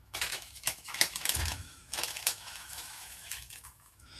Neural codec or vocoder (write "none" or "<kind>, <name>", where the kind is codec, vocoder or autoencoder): autoencoder, DAC-VAE